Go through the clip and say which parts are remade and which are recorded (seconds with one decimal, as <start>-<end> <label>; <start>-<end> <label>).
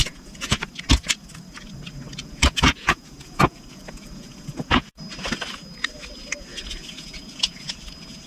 0.0-0.7 remade; 0.7-2.2 recorded; 2.2-5.0 remade; 5.0-6.5 recorded; 6.5-7.8 remade; 7.8-8.3 recorded